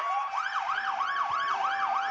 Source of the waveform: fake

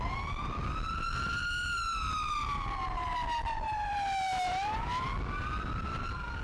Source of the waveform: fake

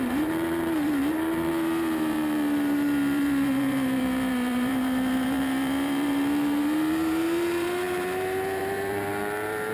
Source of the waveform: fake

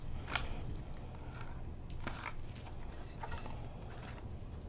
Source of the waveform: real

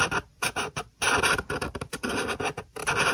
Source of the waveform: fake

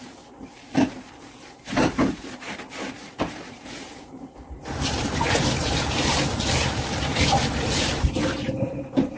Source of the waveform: fake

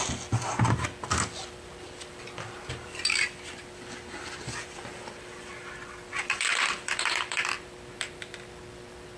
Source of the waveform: fake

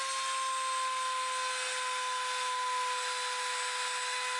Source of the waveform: real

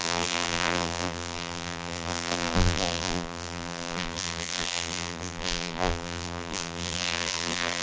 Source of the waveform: fake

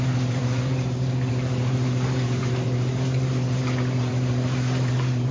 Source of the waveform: fake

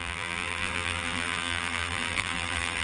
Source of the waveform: fake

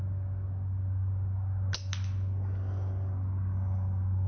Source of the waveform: real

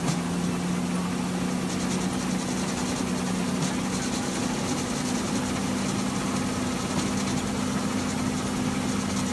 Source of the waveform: real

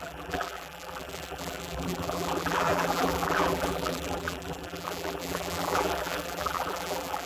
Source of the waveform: fake